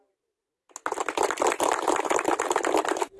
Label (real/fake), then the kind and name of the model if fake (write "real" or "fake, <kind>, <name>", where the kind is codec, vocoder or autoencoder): real